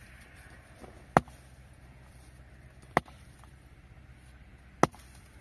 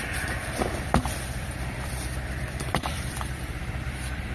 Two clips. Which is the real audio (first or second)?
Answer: first